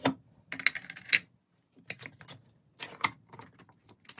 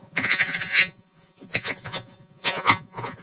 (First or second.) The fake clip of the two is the second